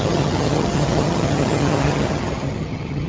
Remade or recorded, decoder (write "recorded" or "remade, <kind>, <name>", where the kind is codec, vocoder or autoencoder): remade, vocoder, HiFi-GAN